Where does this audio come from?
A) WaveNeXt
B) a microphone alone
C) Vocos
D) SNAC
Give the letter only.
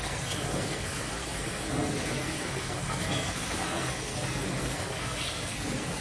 D